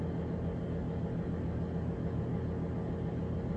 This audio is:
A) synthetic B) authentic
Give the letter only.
B